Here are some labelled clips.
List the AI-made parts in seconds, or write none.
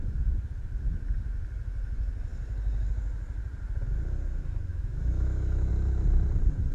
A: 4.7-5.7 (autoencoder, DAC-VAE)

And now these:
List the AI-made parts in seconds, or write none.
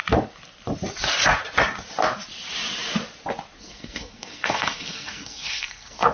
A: 3.6-6.1 (codec, SNAC)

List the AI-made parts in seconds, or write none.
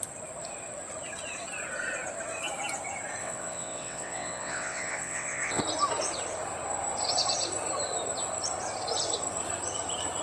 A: 3.2-5.6 (vocoder, WaveNeXt)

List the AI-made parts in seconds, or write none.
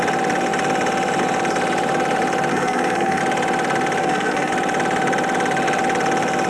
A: 2.5-3.2 (codec, SNAC); 4.0-4.5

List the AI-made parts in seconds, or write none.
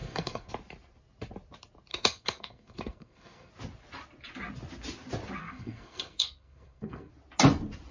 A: 0.0-0.5 (codec, SNAC); 1.9-3.5; 5.4-7.1